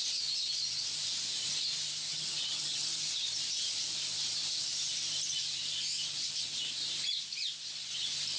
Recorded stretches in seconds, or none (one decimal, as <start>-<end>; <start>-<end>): 0.0-2.1; 3.3-8.4